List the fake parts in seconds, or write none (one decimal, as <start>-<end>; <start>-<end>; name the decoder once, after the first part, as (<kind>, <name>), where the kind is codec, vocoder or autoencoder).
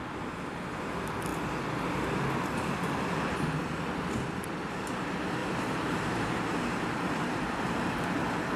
5.4-7.9 (vocoder, BigVGAN v2)